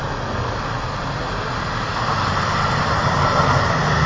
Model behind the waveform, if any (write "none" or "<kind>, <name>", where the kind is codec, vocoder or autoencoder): none